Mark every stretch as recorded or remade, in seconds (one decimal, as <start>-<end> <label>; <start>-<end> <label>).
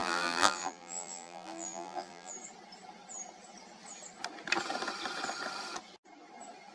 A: 0.0-2.3 remade; 2.3-6.7 recorded